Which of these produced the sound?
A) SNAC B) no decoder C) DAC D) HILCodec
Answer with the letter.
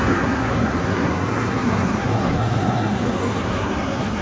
A